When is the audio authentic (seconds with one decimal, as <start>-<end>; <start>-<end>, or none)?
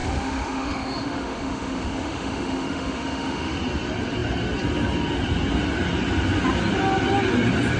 3.6-7.8